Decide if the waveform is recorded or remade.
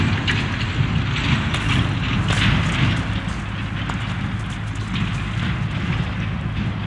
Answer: recorded